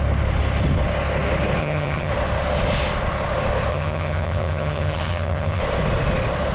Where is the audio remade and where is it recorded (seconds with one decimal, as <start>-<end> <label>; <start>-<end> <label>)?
0.0-1.6 recorded; 1.6-2.1 remade; 2.1-3.7 recorded; 3.7-5.6 remade; 5.6-6.5 recorded